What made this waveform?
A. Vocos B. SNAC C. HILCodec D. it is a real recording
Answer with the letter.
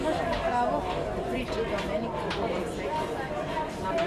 D